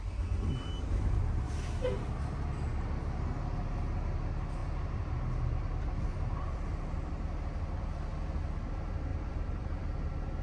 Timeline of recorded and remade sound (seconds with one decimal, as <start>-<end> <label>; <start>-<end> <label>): 0.0-4.6 recorded; 4.6-5.2 remade; 5.2-6.1 recorded; 6.1-7.1 remade; 7.1-9.1 recorded; 9.1-9.8 remade; 9.8-10.4 recorded